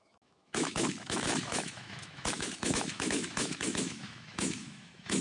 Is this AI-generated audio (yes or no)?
yes